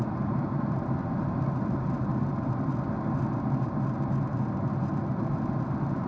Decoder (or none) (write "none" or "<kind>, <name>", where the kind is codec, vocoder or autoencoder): none